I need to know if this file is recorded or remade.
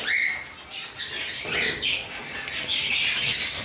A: recorded